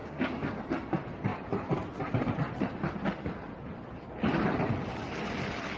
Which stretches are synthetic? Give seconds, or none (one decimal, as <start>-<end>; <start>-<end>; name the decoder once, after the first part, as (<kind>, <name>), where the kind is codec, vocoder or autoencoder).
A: 0.0-0.6 (codec, DAC)